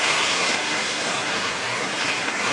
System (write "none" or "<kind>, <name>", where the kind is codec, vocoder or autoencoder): codec, SNAC